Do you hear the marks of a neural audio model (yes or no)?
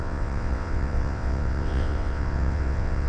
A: yes